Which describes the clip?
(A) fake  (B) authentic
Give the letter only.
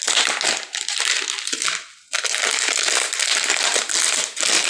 B